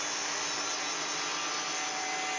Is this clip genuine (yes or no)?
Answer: yes